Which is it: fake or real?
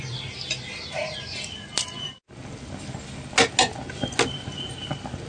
real